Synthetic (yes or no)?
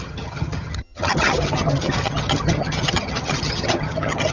yes